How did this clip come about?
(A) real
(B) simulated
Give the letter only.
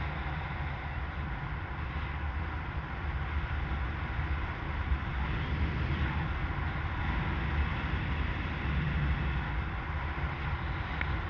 A